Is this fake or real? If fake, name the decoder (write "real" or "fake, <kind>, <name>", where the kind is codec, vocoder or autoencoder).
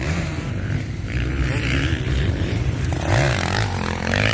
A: fake, vocoder, BigVGAN v2